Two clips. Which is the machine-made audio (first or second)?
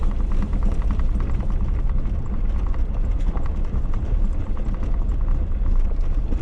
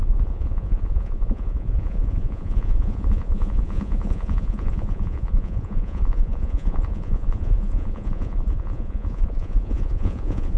second